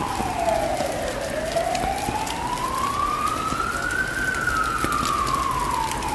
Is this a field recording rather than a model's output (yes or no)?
yes